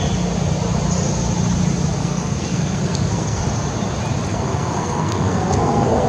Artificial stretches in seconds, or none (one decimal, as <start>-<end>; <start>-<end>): 2.0-3.4; 4.3-6.1